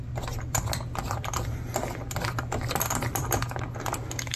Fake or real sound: real